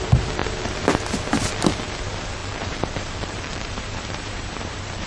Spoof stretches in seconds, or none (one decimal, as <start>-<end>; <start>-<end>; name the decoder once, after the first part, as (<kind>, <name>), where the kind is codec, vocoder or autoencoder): 2.4-5.1 (vocoder, BigVGAN v2)